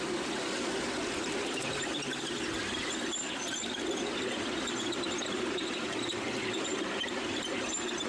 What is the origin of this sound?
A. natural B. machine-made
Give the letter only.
A